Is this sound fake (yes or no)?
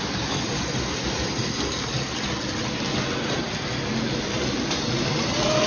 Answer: no